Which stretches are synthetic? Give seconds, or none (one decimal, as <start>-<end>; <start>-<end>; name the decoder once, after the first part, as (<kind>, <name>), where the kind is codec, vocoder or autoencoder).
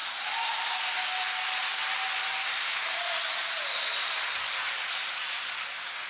0.0-1.1 (vocoder, BigVGAN v2); 2.2-5.6